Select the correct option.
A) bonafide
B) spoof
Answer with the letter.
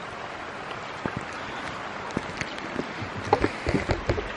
A